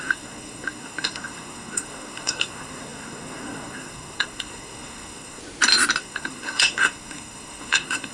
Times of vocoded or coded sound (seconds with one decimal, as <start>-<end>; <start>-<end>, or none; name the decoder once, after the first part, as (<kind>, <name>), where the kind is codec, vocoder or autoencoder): 0.0-5.4 (codec, SNAC); 6.0-8.1